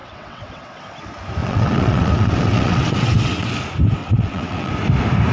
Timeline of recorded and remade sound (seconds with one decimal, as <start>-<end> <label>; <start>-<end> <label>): 0.0-0.8 remade; 0.8-1.4 recorded; 1.4-3.5 remade; 3.5-4.0 recorded; 4.0-4.7 remade; 4.7-5.3 recorded